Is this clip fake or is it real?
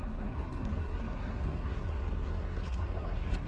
fake